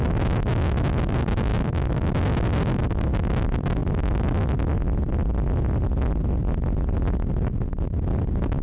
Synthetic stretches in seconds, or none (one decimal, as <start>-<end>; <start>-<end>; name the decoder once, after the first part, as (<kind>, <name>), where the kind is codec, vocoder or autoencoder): none

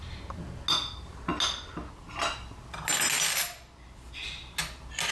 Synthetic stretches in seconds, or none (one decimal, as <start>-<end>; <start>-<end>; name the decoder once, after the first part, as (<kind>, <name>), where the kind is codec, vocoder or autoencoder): none

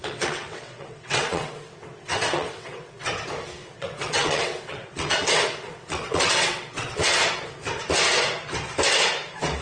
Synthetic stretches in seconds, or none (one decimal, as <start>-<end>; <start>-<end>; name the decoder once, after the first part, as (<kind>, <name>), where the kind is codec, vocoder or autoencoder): 0.0-3.1 (vocoder, WaveNeXt); 3.6-7.2

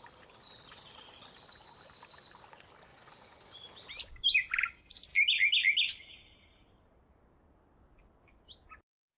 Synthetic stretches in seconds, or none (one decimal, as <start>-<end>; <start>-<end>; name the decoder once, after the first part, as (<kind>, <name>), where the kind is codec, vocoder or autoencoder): 2.9-3.7 (vocoder, Vocos)

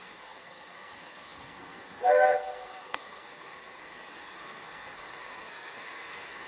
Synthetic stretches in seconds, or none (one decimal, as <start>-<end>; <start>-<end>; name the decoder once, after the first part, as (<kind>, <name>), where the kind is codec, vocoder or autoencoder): 0.0-6.5 (codec, SNAC)

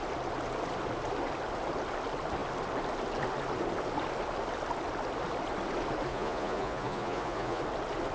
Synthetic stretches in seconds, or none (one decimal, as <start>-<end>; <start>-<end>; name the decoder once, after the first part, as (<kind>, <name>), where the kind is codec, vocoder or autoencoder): 6.1-7.6 (vocoder, Vocos)

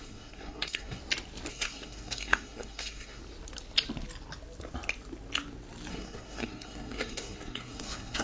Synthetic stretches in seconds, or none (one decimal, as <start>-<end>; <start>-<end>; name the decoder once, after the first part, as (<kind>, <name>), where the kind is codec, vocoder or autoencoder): 0.0-1.0 (codec, SNAC); 1.5-3.2; 5.9-8.2